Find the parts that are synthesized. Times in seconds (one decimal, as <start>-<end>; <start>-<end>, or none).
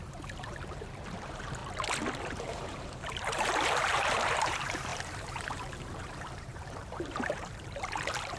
0.0-1.6; 2.2-8.4